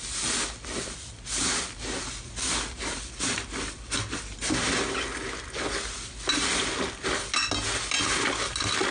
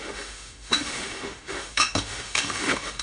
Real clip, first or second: first